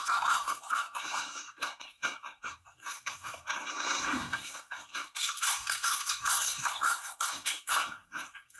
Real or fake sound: fake